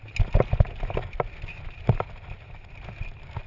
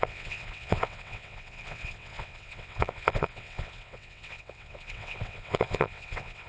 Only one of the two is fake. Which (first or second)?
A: second